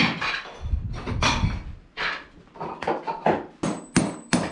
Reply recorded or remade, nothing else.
recorded